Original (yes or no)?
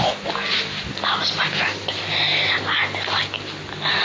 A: yes